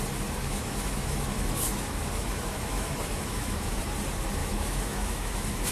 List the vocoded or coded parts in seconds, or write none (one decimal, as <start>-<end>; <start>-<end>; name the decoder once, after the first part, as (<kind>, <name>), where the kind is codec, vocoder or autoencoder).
0.4-3.8 (autoencoder, DAC-VAE); 4.4-5.7

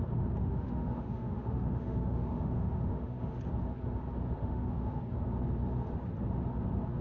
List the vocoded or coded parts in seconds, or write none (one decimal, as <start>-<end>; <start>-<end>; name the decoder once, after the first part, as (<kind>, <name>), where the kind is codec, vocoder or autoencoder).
0.4-3.4 (autoencoder, DAC-VAE); 4.4-5.0

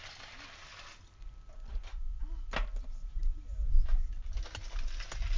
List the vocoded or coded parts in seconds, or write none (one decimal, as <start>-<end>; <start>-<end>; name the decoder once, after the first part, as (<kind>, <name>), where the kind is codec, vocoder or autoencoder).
none

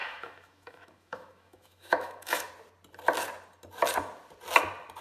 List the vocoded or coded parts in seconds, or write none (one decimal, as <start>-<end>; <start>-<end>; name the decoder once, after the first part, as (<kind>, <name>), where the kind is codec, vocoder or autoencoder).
0.0-2.5 (autoencoder, DAC-VAE)

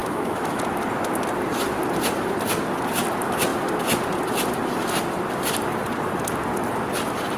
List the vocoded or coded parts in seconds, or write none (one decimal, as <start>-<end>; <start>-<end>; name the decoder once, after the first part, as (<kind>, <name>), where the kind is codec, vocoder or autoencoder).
0.0-0.6 (autoencoder, DAC-VAE)

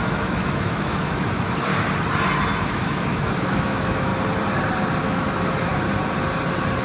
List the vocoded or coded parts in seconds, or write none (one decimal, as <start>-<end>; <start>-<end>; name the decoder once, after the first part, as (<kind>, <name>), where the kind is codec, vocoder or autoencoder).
0.0-1.7 (autoencoder, DAC-VAE); 2.6-4.1; 5.0-5.7